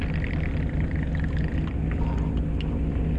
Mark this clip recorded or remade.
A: recorded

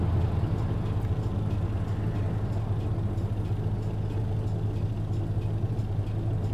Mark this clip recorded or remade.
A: recorded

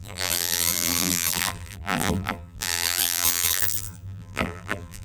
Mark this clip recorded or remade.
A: remade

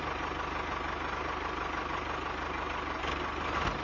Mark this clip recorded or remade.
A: recorded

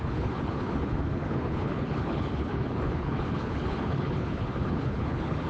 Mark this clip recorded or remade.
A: remade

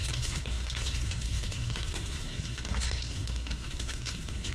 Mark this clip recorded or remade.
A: remade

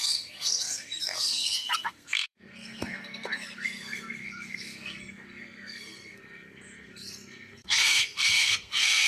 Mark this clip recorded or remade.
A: remade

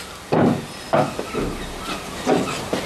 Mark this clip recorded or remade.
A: recorded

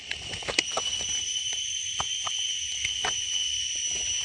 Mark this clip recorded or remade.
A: recorded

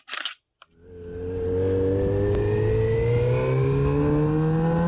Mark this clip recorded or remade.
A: recorded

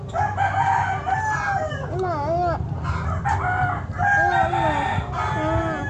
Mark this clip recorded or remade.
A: recorded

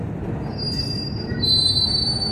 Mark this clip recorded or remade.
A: recorded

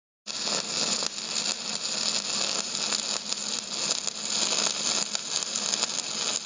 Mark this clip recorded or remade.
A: recorded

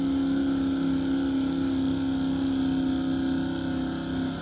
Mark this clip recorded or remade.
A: recorded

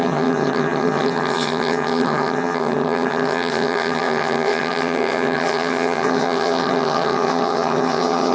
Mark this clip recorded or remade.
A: remade